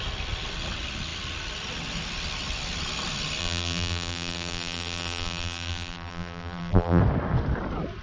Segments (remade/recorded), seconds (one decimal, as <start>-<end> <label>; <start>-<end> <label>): 0.0-3.4 recorded; 3.4-7.0 remade; 7.0-8.0 recorded